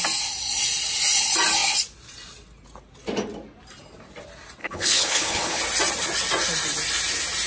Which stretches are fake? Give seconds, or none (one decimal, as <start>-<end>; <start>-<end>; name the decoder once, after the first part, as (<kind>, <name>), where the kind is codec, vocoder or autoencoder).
4.6-5.6 (codec, HILCodec)